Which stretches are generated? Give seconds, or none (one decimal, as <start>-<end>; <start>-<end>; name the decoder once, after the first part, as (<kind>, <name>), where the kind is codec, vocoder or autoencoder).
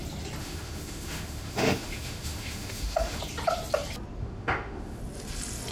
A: 0.4-3.2 (autoencoder, DAC-VAE); 4.2-5.0